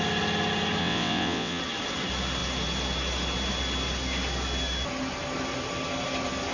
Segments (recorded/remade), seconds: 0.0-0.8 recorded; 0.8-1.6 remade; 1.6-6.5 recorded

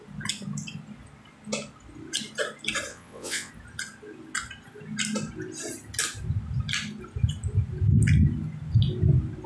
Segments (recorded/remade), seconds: 0.0-2.9 recorded; 2.9-3.5 remade; 3.5-9.5 recorded